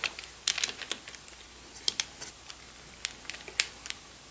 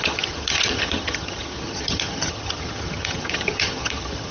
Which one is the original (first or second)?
first